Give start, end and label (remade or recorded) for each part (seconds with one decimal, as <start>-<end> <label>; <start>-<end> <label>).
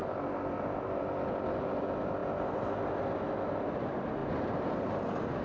0.0-4.2 recorded; 4.2-4.7 remade; 4.7-5.4 recorded